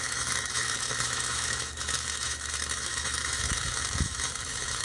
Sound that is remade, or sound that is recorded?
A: remade